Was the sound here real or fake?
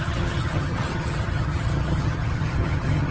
fake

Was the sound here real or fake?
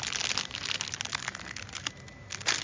real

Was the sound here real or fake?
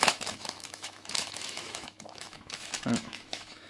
fake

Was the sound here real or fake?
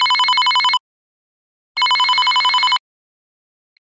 real